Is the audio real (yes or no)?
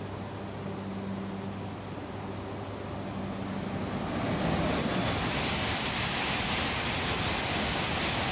yes